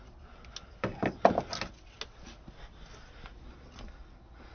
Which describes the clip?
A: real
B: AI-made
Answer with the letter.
A